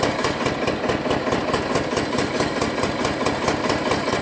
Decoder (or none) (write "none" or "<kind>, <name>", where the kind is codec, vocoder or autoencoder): none